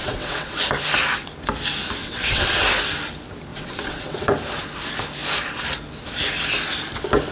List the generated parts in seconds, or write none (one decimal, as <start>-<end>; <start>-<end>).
0.0-0.6; 2.0-2.6; 3.5-4.3